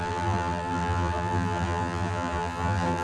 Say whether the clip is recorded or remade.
remade